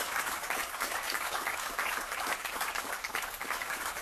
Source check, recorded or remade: remade